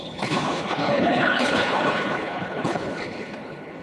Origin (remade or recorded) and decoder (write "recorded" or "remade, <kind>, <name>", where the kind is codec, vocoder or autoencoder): remade, codec, HILCodec